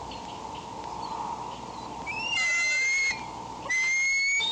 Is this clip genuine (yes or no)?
yes